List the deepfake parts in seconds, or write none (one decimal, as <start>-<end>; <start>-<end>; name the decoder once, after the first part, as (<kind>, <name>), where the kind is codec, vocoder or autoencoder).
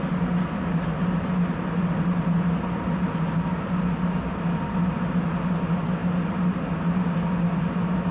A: none